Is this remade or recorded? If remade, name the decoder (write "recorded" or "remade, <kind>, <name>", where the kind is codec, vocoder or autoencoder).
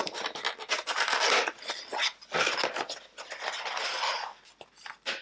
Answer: recorded